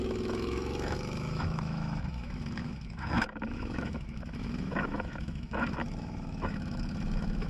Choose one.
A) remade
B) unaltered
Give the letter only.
A